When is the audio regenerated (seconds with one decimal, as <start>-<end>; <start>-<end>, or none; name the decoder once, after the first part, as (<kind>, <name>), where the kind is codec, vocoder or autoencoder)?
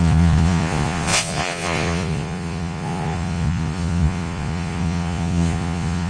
0.0-6.1 (vocoder, Vocos)